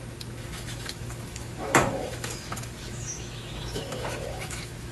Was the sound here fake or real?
fake